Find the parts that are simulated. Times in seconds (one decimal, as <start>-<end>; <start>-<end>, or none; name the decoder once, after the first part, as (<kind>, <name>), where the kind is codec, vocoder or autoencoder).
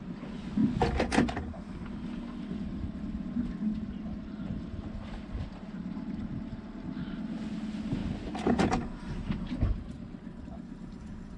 none